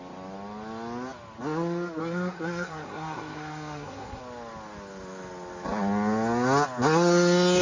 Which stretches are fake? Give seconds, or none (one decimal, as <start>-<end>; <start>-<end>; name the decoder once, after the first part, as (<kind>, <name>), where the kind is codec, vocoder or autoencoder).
2.0-4.2 (codec, SNAC)